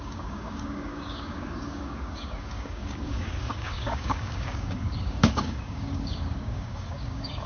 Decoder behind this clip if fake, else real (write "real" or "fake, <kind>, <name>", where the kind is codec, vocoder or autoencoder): fake, codec, DAC